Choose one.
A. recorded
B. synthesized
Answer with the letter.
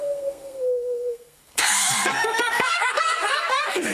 B